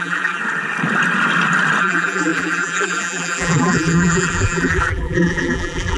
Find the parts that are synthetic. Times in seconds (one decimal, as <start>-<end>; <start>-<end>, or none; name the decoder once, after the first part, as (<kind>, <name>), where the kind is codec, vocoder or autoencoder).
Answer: 0.0-0.4 (vocoder, BigVGAN v2); 1.8-6.0

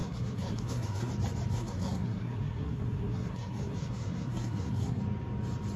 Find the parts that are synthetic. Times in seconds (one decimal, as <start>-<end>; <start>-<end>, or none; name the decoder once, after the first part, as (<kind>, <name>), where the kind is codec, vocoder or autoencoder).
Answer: 0.0-1.1 (codec, SNAC); 1.5-5.0

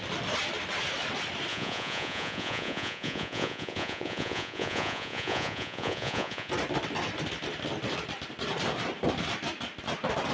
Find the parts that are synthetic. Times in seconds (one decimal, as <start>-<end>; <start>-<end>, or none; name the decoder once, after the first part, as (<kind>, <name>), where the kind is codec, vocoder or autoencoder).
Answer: 1.5-6.5 (vocoder, Vocos)

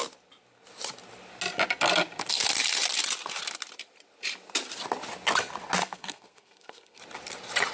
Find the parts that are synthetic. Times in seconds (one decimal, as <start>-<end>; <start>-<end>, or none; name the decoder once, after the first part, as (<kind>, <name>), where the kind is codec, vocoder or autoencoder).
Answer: 5.8-7.0 (codec, SNAC)